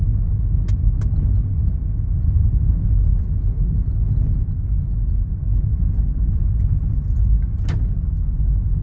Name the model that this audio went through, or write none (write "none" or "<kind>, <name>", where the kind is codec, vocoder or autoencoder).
none